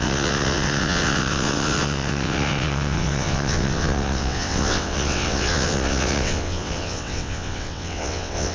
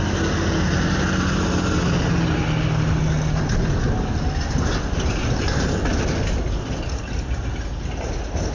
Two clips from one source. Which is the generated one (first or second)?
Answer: first